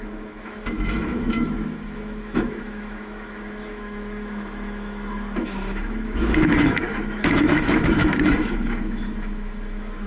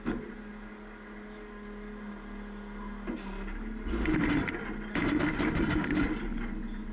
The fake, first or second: first